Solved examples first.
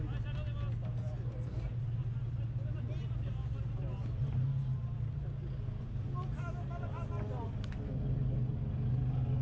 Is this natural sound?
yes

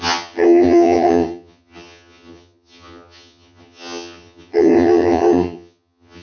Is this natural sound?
no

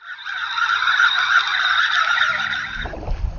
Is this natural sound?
yes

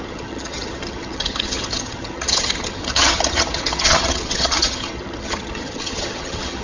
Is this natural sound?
no